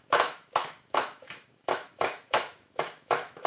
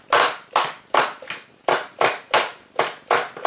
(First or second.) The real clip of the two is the second